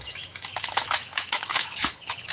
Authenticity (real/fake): fake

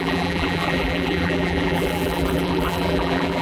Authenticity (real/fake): fake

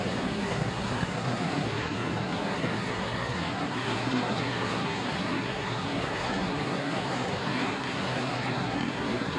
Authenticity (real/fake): fake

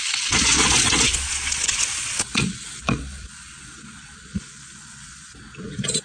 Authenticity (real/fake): fake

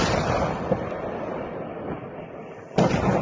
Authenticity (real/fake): real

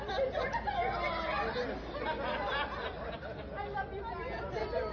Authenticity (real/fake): real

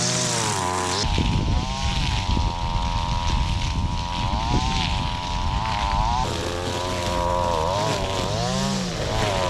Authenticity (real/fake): real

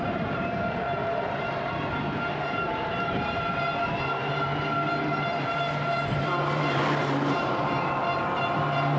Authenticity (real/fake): fake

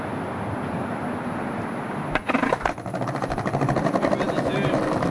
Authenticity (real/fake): real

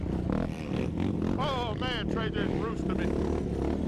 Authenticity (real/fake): real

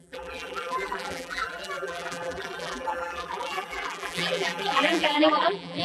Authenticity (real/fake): fake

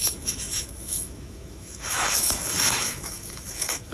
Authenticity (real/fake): fake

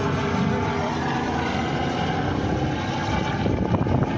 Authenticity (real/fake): real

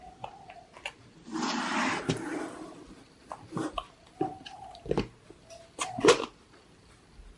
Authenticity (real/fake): real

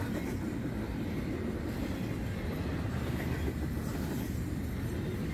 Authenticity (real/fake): real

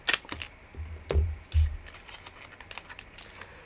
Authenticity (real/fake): real